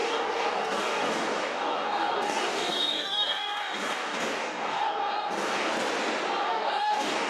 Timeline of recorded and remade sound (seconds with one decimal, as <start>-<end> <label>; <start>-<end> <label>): 0.0-5.7 remade; 5.7-6.4 recorded; 6.4-7.3 remade